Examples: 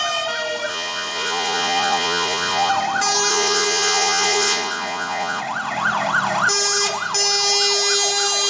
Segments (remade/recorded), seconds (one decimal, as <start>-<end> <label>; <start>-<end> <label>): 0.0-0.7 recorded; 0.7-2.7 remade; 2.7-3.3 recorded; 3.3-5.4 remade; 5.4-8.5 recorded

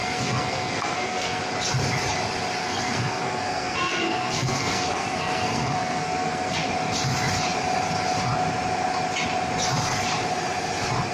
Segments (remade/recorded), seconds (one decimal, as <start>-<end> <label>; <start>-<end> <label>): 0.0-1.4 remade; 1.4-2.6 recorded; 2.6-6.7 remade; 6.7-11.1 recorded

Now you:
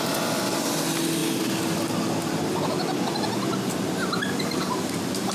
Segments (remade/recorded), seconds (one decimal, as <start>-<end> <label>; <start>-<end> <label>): 0.0-5.3 recorded

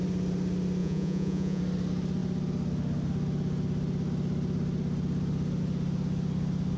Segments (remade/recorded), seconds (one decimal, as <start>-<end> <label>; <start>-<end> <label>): 0.0-0.8 recorded; 0.8-1.6 remade; 1.6-6.8 recorded

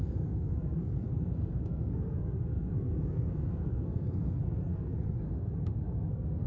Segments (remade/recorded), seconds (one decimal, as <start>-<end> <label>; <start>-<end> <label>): 0.0-6.5 remade

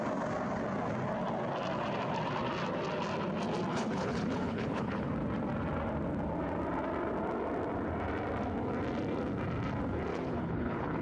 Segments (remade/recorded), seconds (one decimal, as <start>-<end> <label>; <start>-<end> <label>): 0.0-3.7 recorded; 3.7-5.1 remade; 5.1-10.1 recorded; 10.1-11.0 remade

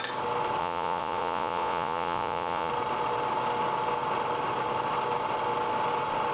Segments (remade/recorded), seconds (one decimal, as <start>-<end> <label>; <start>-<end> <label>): 0.0-0.6 recorded; 0.6-2.7 remade; 2.7-6.3 recorded

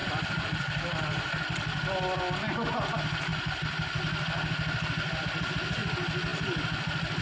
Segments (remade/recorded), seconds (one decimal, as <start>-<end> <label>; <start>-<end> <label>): 0.0-2.2 remade; 2.2-7.2 recorded